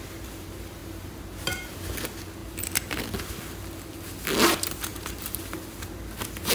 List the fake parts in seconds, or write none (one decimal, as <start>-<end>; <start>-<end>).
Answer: 4.9-5.4